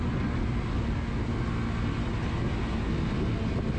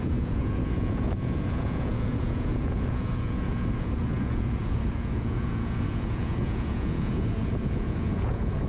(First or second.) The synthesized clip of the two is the second